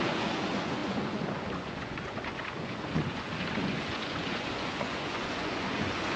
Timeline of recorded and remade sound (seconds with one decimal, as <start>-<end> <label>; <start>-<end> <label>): 0.0-6.2 remade